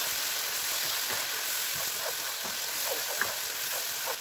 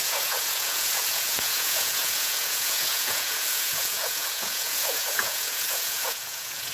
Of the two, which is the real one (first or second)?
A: first